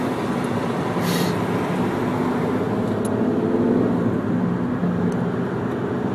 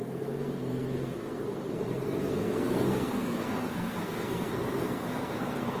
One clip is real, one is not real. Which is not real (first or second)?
second